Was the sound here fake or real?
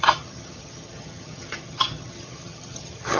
fake